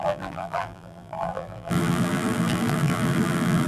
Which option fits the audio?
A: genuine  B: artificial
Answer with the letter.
B